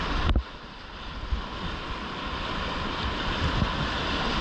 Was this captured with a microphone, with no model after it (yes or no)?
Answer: yes